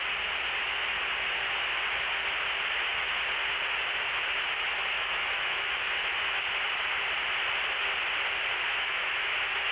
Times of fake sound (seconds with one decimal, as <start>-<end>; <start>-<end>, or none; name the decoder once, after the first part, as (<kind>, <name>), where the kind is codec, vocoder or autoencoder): 4.0-6.4 (autoencoder, DAC-VAE); 8.7-9.7